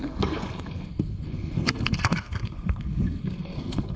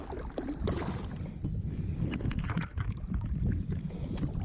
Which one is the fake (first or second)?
first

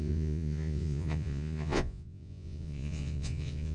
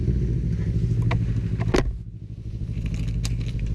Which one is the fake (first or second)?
first